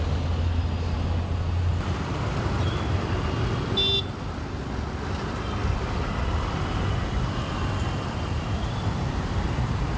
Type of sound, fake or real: real